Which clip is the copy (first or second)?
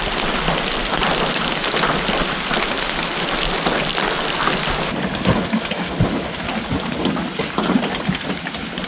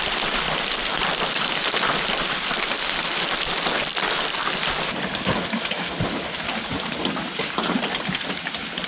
second